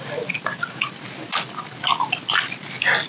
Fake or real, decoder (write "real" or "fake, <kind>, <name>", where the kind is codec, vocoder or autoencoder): real